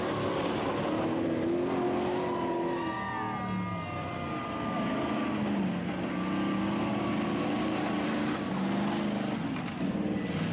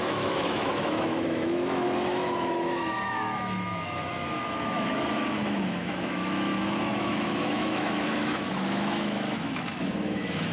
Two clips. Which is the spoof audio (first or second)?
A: second